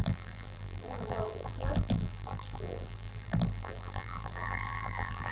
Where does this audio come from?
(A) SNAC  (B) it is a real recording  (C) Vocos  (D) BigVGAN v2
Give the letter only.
D